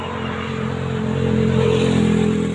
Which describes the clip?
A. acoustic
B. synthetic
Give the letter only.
A